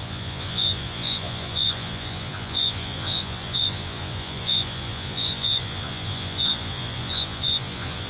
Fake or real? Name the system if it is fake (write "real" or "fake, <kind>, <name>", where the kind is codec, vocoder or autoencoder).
fake, vocoder, Vocos